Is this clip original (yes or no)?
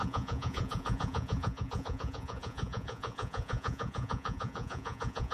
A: no